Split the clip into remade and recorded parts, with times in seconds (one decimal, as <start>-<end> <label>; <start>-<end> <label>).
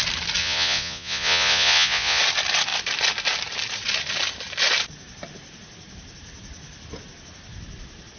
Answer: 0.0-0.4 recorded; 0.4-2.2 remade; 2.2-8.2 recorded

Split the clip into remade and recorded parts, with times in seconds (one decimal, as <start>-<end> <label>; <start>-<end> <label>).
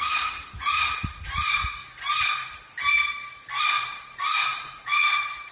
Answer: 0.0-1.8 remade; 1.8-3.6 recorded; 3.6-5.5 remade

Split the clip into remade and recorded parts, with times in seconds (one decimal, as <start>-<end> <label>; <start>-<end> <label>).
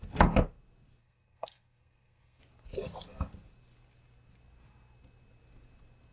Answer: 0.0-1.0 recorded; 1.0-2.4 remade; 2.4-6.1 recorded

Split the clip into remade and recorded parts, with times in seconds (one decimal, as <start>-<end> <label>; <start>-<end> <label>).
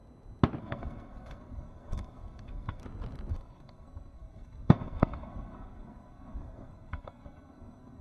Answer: 0.0-0.6 recorded; 0.6-2.8 remade; 2.8-3.3 recorded; 3.3-8.0 remade